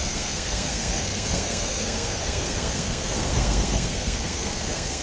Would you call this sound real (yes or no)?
no